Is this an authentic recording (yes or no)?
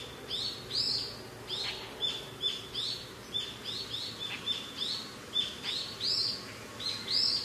yes